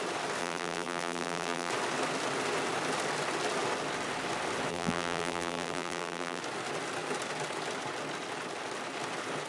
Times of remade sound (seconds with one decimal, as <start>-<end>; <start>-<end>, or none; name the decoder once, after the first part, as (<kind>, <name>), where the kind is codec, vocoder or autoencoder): 0.4-1.7 (vocoder, BigVGAN v2); 4.7-6.4